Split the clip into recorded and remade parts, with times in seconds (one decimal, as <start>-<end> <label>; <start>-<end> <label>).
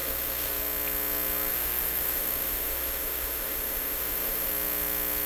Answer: 0.0-0.5 remade; 0.5-1.5 recorded; 1.5-4.5 remade; 4.5-5.3 recorded